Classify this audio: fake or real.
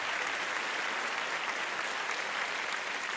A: real